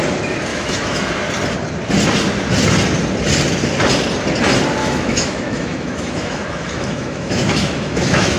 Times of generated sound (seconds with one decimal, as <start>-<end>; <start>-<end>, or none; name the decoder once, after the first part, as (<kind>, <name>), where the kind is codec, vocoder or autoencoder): 0.5-1.1 (autoencoder, DAC-VAE); 4.8-8.4